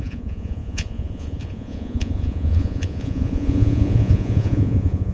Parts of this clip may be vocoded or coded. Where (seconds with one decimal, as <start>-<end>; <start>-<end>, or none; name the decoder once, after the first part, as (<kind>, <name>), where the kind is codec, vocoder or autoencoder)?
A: 0.0-5.1 (vocoder, Vocos)